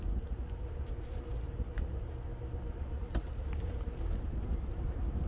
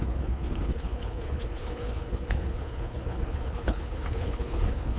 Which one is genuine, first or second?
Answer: first